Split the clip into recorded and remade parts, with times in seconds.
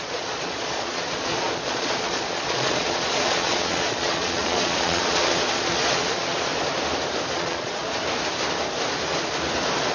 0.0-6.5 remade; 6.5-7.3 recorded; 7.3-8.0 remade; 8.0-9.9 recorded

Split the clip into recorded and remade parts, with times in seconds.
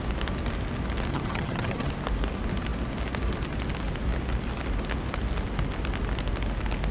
0.0-1.1 recorded; 1.1-1.9 remade; 1.9-6.9 recorded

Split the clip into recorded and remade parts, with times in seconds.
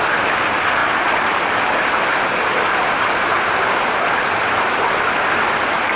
0.0-6.0 recorded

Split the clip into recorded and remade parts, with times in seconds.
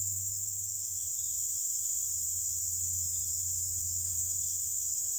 0.0-1.1 remade; 1.1-3.8 recorded; 3.8-5.2 remade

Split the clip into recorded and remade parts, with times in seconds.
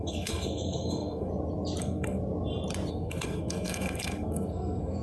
0.0-1.3 remade; 1.3-1.8 recorded; 1.8-2.2 remade; 2.2-2.9 recorded; 2.9-5.0 remade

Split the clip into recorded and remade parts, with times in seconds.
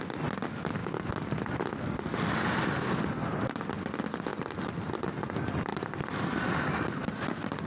0.0-5.7 recorded; 5.7-7.7 remade